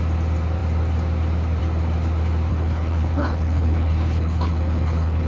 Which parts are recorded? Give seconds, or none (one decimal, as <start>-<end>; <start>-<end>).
0.0-2.5